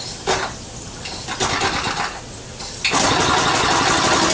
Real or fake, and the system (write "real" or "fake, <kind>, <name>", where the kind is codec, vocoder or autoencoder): real